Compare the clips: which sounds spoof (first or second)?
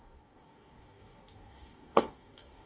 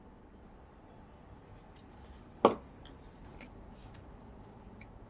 first